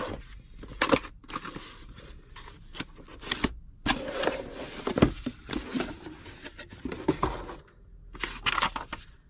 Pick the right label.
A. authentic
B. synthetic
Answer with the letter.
A